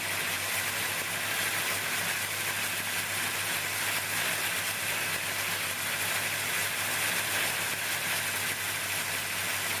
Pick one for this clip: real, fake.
real